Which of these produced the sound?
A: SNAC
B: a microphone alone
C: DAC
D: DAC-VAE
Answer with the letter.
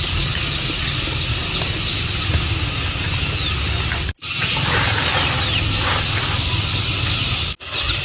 B